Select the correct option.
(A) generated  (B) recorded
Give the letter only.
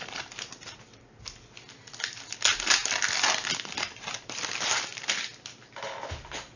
B